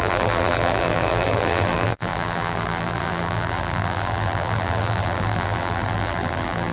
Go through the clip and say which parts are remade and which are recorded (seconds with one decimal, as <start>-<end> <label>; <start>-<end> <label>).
0.0-6.7 remade